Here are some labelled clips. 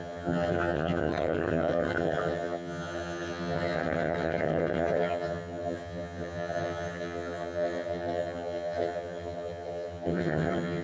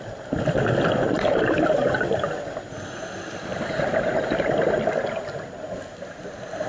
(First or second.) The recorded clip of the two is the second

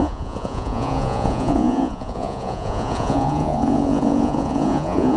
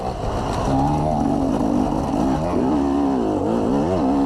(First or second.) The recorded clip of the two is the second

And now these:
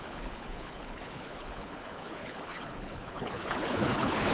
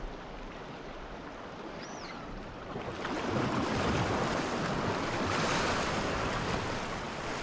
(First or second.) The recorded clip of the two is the second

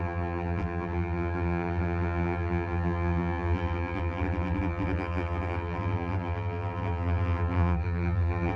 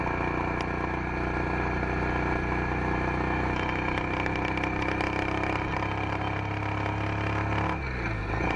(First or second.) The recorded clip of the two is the second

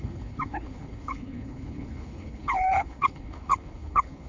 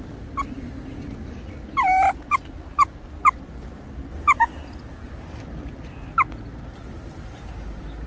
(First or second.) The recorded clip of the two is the second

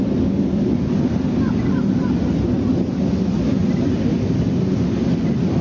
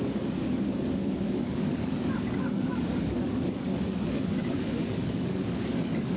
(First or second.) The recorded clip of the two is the first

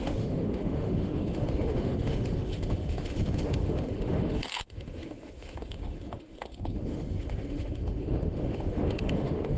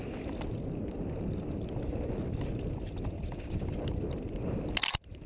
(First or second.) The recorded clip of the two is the second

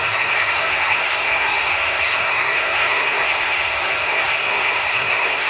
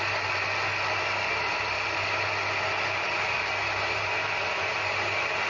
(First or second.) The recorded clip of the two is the second